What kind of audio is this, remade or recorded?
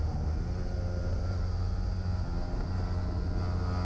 recorded